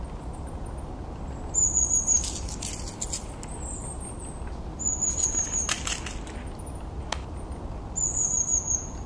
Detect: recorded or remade recorded